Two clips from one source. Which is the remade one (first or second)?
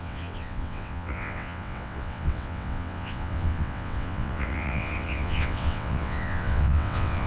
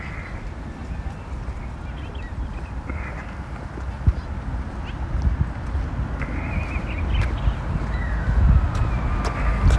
first